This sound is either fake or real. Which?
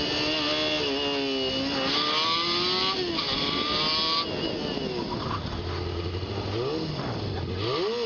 real